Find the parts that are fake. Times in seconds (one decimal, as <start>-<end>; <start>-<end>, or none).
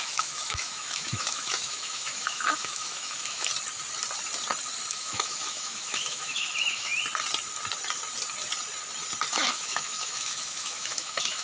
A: 0.0-3.5; 4.9-6.9; 9.3-11.4